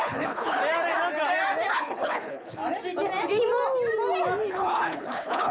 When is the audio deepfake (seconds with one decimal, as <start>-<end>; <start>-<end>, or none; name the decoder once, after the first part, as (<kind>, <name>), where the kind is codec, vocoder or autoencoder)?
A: 0.0-0.6 (codec, HILCodec); 1.7-2.6; 4.5-5.5